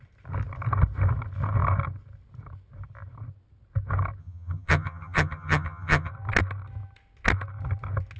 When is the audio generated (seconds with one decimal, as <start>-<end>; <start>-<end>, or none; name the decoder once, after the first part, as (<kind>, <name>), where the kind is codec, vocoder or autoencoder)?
4.2-6.1 (vocoder, HiFi-GAN)

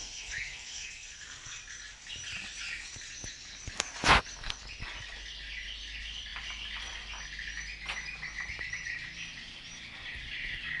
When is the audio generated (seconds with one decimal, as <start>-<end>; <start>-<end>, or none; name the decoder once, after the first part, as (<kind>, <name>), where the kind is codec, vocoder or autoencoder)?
0.0-1.6 (codec, SNAC)

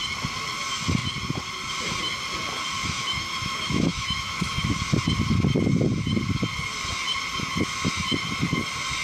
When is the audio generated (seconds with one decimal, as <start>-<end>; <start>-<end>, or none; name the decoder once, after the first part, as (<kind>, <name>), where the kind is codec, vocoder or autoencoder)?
2.8-4.8 (autoencoder, DAC-VAE)

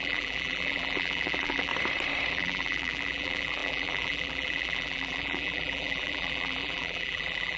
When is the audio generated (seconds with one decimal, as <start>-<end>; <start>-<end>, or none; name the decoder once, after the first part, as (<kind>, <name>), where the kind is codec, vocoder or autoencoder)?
0.0-1.7 (vocoder, BigVGAN v2); 2.3-7.6

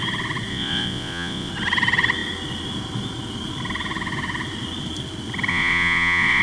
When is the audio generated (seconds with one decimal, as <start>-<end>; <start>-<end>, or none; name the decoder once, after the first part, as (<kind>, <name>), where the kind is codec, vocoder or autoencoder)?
0.5-1.5 (vocoder, Vocos); 5.5-6.4

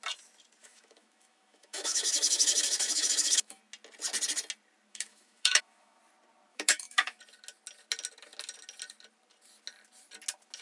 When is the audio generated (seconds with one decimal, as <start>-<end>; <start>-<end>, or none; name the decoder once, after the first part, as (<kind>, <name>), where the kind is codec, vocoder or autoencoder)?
0.6-3.6 (autoencoder, DAC-VAE); 4.9-6.0; 6.5-7.2

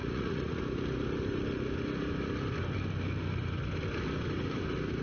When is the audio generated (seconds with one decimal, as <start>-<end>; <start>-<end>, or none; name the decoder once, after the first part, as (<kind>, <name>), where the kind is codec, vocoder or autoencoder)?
0.0-0.6 (vocoder, Vocos)